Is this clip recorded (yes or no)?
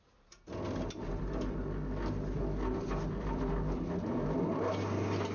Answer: yes